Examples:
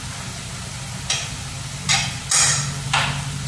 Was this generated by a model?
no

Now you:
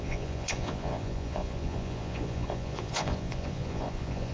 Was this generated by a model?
yes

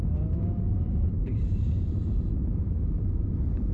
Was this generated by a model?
yes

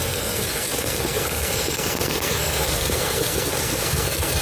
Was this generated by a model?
yes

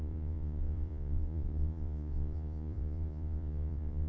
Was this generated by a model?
yes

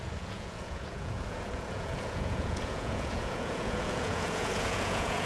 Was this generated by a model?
yes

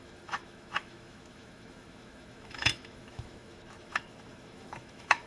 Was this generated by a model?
yes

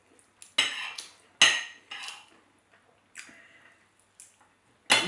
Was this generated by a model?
no